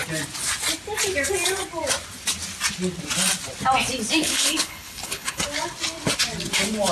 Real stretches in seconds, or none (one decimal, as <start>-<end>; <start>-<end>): 0.0-4.2; 5.4-6.9